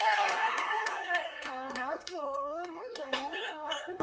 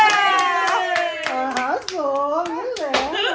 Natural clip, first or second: second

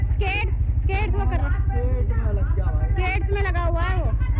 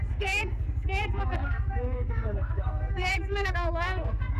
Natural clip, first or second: first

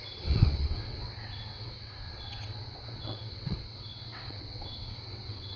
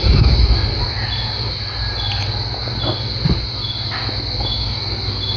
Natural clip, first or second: second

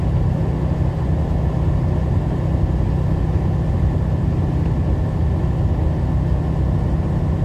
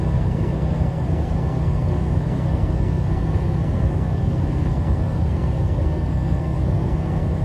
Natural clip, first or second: first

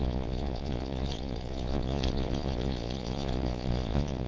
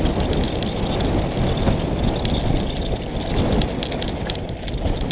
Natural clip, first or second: second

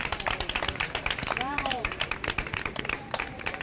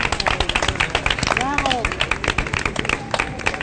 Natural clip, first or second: second